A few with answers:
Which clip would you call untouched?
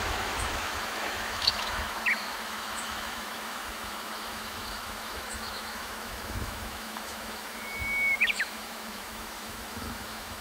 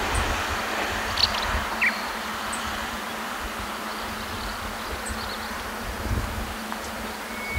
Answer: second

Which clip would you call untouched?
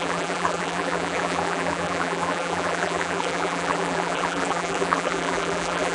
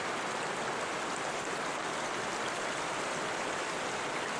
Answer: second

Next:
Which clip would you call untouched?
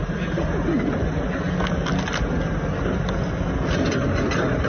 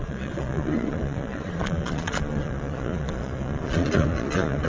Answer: first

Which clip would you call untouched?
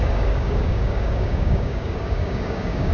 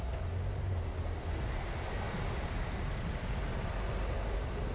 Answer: second